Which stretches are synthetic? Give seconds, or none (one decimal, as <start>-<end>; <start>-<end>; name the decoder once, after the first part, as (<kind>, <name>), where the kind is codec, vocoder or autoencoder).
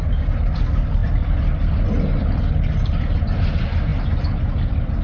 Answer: none